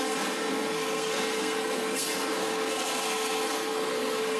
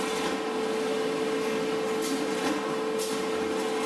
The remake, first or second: first